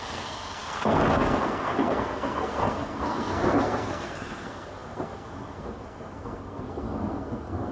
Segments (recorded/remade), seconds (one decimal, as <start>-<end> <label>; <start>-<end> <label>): 0.0-7.7 remade